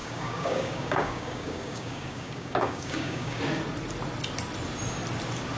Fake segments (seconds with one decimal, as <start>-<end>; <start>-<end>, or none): 0.0-3.4